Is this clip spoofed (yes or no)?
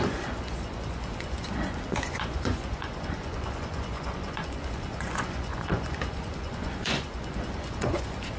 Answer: yes